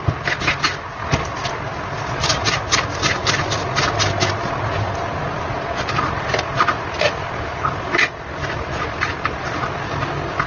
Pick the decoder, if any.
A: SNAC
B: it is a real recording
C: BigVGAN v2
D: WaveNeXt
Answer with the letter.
B